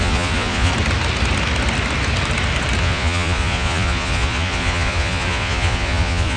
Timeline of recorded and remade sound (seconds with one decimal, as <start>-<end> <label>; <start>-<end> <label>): 0.0-0.7 remade; 0.7-2.8 recorded; 2.8-6.4 remade